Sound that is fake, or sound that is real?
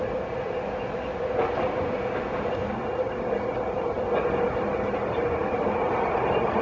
real